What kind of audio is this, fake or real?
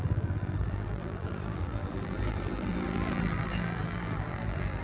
fake